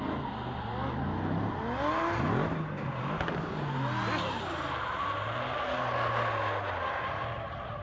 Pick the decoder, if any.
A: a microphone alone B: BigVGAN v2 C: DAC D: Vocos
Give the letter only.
A